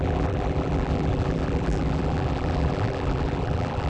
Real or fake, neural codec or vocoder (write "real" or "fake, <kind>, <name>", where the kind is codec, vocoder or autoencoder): fake, vocoder, BigVGAN v2